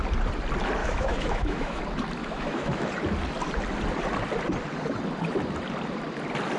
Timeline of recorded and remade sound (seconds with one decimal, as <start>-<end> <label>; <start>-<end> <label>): 0.0-0.8 recorded; 0.8-1.8 remade; 1.8-2.2 recorded; 2.2-2.9 remade; 2.9-6.6 recorded